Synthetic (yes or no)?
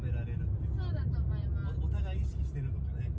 no